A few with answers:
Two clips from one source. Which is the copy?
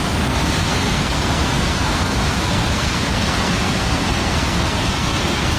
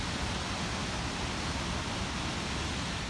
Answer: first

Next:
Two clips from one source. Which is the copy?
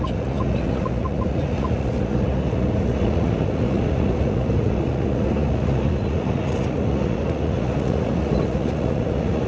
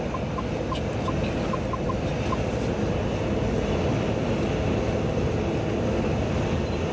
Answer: first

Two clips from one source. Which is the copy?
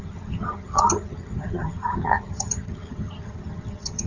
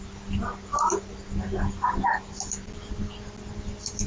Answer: first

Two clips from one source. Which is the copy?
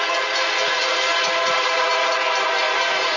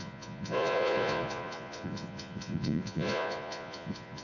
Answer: second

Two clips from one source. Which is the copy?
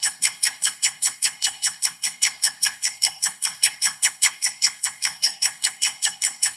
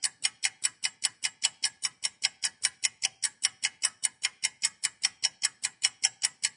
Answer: first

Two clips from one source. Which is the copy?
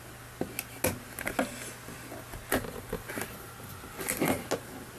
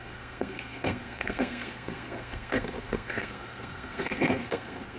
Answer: second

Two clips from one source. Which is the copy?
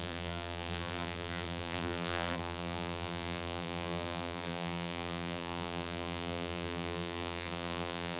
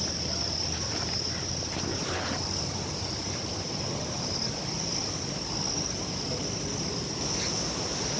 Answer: first